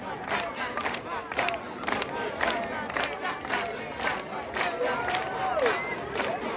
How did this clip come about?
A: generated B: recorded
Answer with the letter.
B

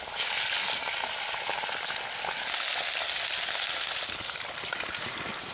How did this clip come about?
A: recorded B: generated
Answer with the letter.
A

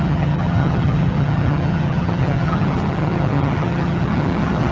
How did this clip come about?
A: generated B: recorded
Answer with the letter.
A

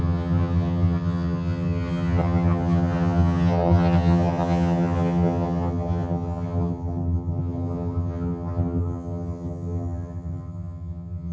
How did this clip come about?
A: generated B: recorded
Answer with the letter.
A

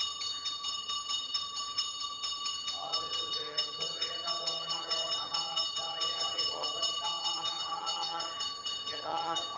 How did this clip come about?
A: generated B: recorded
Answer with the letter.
A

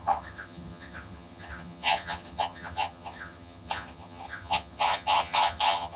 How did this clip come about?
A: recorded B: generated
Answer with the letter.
B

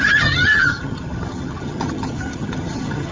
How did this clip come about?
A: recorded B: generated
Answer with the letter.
B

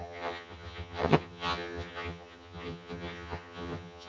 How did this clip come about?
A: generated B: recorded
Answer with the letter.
A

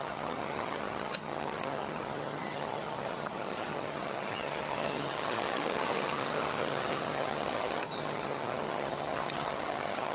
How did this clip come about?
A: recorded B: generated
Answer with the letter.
B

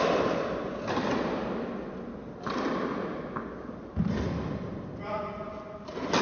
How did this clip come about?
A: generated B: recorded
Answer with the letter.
B